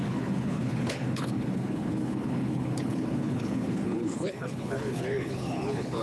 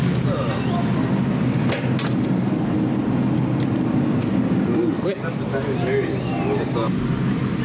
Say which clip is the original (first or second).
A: second